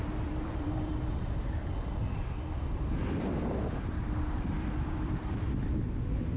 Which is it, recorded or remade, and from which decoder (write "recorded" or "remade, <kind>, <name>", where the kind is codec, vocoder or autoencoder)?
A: remade, vocoder, BigVGAN v2